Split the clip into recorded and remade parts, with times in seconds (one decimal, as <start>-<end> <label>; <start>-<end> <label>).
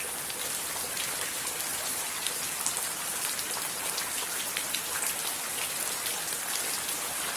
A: 0.0-7.4 recorded